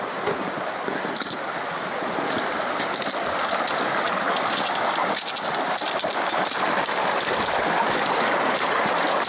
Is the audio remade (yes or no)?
no